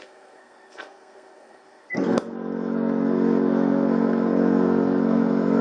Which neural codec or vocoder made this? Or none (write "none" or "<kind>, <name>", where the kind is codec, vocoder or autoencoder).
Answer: codec, SNAC